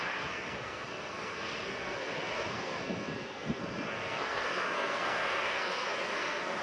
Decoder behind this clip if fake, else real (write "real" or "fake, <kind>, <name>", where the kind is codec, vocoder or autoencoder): fake, codec, SNAC